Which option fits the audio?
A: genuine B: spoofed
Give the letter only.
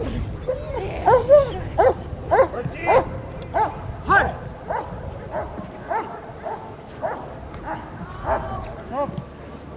A